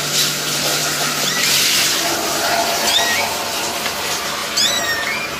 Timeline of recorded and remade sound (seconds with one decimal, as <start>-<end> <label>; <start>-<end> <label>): 0.0-5.4 recorded